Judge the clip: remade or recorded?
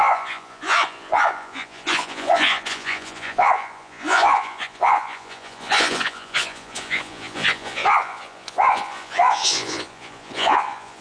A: remade